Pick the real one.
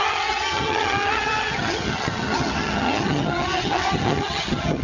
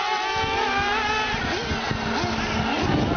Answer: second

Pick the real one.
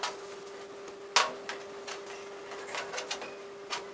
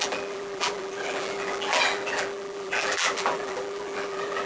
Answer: first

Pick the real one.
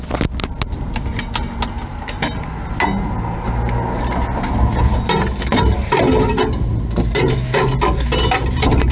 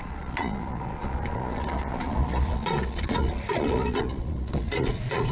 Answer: first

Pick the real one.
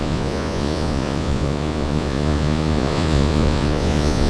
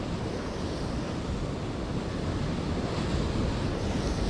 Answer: second